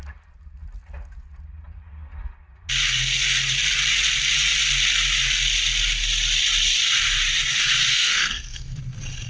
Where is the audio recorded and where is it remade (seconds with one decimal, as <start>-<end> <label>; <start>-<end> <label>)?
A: 0.0-7.9 recorded; 7.9-8.8 remade; 8.8-9.3 recorded